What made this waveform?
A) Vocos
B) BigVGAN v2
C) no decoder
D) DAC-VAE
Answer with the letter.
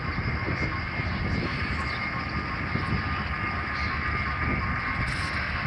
C